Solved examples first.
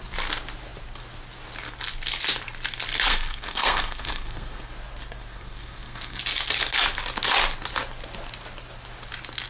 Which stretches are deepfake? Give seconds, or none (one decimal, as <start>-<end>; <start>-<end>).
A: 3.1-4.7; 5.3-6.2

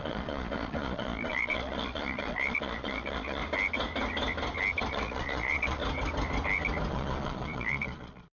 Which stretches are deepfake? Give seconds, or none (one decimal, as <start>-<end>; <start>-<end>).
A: 0.0-3.4; 4.9-5.8; 6.9-8.4

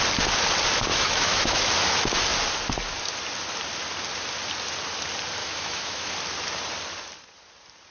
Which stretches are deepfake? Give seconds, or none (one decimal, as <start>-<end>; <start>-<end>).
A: 0.9-1.7; 5.4-6.1

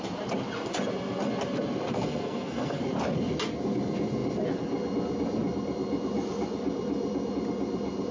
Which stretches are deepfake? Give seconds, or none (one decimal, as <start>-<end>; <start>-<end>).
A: 1.9-2.8